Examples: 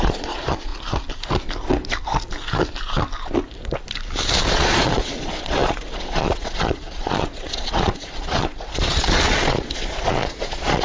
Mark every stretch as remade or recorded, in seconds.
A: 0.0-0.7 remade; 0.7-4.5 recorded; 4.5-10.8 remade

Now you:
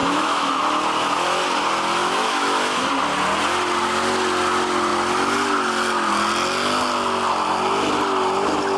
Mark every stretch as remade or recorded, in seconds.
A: 0.0-0.6 remade; 0.6-2.0 recorded; 2.0-2.9 remade; 2.9-8.8 recorded

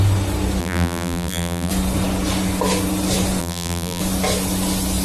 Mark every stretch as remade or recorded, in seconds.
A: 0.0-0.6 recorded; 0.6-1.7 remade; 1.7-3.4 recorded; 3.4-4.0 remade; 4.0-5.0 recorded

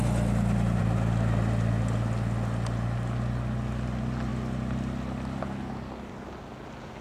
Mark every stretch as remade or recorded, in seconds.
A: 0.0-7.0 recorded

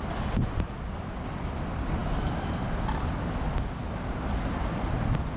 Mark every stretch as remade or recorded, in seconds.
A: 0.0-5.4 recorded

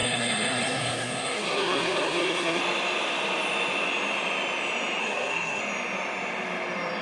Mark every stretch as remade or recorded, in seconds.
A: 0.0-2.6 remade; 2.6-5.0 recorded; 5.0-5.6 remade; 5.6-7.0 recorded

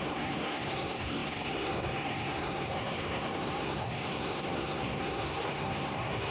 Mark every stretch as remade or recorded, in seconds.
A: 0.0-6.3 remade